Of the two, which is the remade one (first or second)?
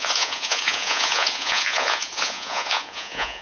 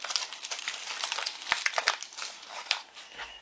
first